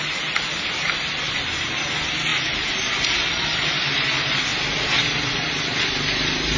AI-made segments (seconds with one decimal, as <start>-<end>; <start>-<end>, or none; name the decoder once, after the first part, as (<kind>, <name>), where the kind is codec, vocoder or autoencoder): none